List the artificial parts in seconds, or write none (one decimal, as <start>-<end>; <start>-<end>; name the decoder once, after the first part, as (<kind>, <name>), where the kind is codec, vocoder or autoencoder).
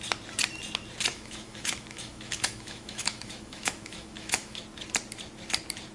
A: 1.1-4.6 (autoencoder, DAC-VAE)